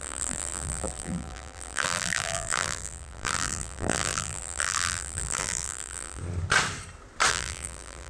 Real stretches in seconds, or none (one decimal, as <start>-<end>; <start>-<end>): 6.2-7.3